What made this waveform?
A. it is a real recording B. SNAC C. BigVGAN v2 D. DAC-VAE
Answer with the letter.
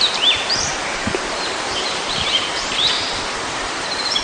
C